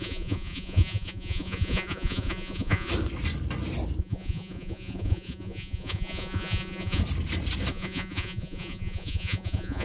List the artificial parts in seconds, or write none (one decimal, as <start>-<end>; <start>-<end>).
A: 0.0-2.9; 4.0-7.0; 7.7-9.8